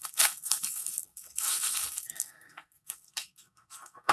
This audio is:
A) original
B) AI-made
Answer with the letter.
B